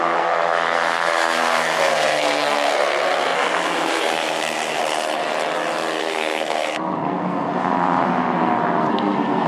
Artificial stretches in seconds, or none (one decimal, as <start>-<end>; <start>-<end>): 0.0-4.8; 6.0-9.5